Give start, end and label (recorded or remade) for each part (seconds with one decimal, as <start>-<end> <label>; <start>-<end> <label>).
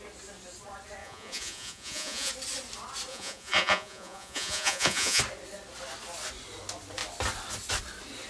0.0-1.0 recorded; 1.0-2.3 remade; 2.3-3.1 recorded; 3.1-5.2 remade; 5.2-8.3 recorded